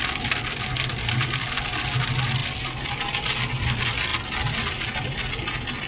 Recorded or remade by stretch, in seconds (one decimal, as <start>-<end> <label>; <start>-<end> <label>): 0.0-5.9 recorded

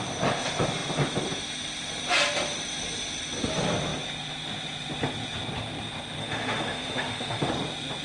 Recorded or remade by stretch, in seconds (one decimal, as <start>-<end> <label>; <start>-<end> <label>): 0.0-6.2 recorded; 6.2-7.5 remade; 7.5-8.0 recorded

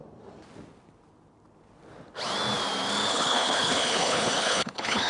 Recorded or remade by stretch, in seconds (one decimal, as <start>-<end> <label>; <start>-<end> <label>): 0.0-3.1 recorded; 3.1-5.1 remade

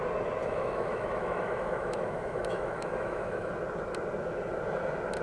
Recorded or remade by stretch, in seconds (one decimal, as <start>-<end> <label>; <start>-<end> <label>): 0.0-0.4 recorded; 0.4-3.5 remade; 3.5-5.2 recorded

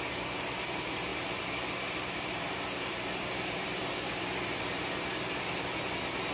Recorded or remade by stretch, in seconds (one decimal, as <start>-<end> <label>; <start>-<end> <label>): 0.0-1.1 recorded; 1.1-4.9 remade; 4.9-6.3 recorded

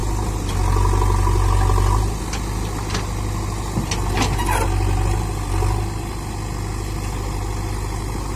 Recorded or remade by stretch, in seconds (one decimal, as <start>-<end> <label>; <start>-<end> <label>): 0.0-8.4 recorded

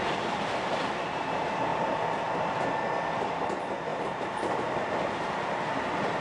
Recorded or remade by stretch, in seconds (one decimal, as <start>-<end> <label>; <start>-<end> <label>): 0.0-3.9 recorded; 3.9-5.4 remade; 5.4-6.2 recorded

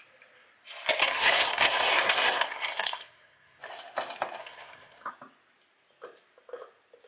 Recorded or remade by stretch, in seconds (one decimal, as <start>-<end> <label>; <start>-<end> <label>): 0.0-1.0 recorded; 1.0-3.6 remade; 3.6-4.4 recorded; 4.4-5.1 remade; 5.1-7.1 recorded